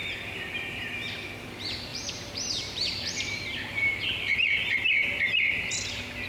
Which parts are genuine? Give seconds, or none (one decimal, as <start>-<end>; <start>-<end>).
0.9-1.9; 5.7-6.3